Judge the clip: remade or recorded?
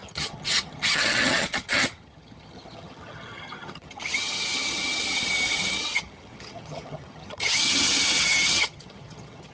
remade